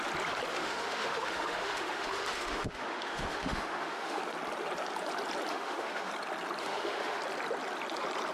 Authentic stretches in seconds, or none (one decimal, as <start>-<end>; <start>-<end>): 0.0-0.5; 4.2-5.5; 6.1-6.6; 7.2-8.3